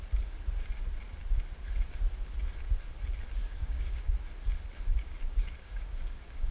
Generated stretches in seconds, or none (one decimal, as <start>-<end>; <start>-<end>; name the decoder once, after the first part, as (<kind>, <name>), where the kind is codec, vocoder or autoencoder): 3.4-4.1 (codec, DAC); 4.9-6.5